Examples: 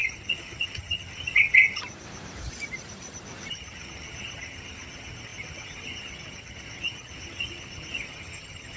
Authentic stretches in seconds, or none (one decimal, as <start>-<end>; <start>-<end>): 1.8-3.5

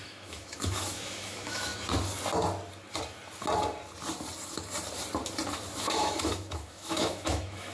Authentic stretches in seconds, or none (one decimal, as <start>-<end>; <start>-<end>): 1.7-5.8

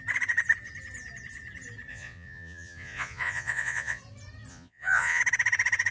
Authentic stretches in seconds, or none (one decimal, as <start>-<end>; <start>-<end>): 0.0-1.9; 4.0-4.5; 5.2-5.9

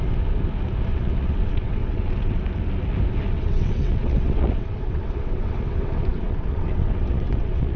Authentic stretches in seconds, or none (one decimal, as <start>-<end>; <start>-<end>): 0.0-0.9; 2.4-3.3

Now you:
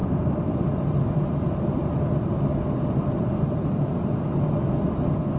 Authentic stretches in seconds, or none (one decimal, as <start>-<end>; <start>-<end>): 0.9-5.4

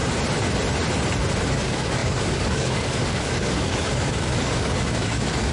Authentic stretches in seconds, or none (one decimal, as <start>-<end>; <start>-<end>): 0.0-1.4